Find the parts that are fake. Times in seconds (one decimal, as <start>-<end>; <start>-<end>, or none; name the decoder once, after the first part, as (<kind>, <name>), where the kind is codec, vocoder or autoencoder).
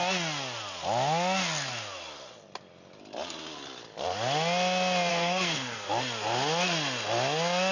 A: 5.1-5.9 (codec, SNAC)